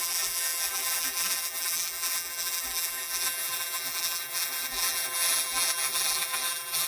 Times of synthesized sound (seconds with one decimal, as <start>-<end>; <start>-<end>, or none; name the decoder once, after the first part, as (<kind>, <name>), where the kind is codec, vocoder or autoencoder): 0.0-6.9 (vocoder, BigVGAN v2)